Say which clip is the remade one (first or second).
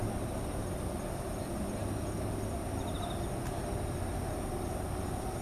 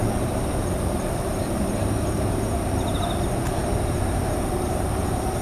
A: second